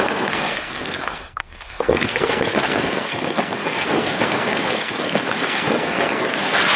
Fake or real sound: fake